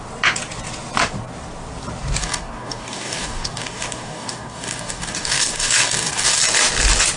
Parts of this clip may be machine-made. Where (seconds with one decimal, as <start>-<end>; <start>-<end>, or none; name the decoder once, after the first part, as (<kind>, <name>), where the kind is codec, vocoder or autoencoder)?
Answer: 2.2-6.4 (codec, DAC)